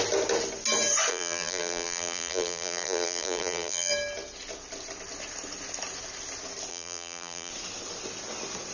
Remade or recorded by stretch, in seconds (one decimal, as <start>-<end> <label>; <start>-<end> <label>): 0.0-1.1 recorded; 1.1-3.9 remade; 3.9-6.7 recorded; 6.7-7.5 remade; 7.5-8.7 recorded